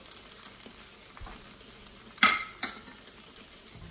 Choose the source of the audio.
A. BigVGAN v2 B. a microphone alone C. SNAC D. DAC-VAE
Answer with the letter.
B